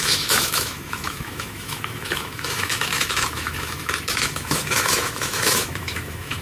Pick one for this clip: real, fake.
fake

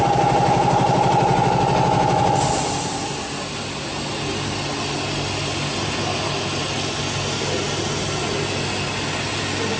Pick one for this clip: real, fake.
real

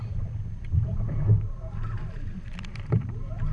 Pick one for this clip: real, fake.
real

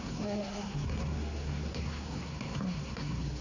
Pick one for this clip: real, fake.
fake